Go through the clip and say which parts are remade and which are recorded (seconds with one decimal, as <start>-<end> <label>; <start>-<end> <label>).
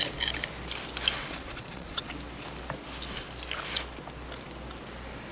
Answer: 0.0-1.2 recorded; 1.2-2.1 remade; 2.1-5.3 recorded